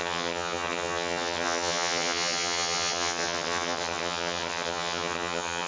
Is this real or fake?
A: fake